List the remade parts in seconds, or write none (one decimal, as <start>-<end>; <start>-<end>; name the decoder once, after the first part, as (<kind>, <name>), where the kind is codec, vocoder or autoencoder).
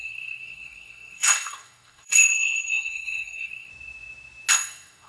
0.0-3.7 (codec, SNAC); 4.5-5.1